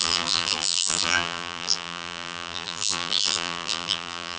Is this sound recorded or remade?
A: remade